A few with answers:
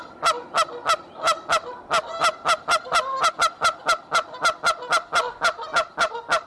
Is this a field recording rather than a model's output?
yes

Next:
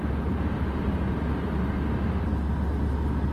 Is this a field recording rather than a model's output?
yes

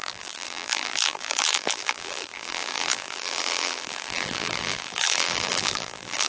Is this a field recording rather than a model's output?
no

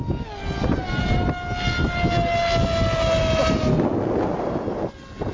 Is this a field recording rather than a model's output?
yes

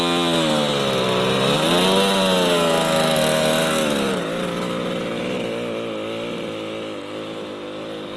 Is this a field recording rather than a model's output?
yes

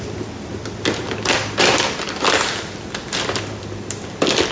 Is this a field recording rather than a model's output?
yes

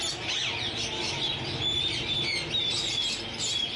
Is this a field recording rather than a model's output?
yes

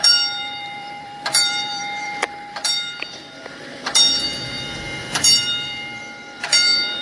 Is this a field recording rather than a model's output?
no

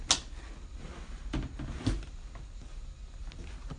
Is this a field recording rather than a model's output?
yes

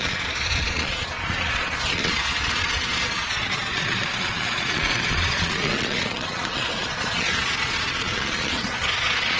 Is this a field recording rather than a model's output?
no